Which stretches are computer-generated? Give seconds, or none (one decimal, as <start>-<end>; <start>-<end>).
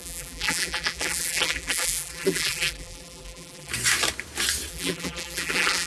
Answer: 0.0-3.7; 4.7-5.9